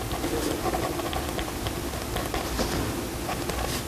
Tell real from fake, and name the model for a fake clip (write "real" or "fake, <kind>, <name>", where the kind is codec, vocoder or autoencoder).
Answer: real